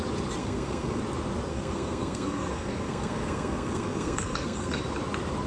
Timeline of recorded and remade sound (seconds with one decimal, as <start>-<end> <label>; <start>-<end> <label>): 0.0-0.4 recorded; 0.4-1.0 remade; 1.0-1.5 recorded; 1.5-4.8 remade; 4.8-5.5 recorded